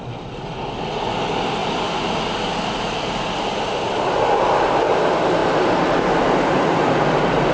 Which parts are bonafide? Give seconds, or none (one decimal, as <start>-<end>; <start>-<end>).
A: 0.0-7.5